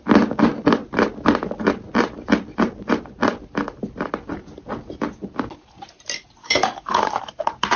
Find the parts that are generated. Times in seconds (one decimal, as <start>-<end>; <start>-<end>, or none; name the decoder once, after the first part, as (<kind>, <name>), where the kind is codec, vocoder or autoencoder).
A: 6.4-7.2 (codec, DAC)